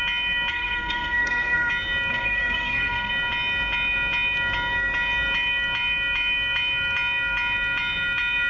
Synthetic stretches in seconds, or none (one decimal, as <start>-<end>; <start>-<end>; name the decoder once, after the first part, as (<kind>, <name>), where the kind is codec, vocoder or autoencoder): 0.5-1.7 (codec, SNAC); 2.1-3.1